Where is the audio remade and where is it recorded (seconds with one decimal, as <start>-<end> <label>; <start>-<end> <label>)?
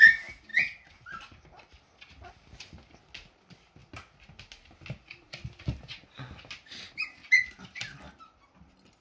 0.0-9.0 recorded